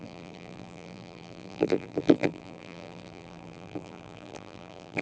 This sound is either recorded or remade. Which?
remade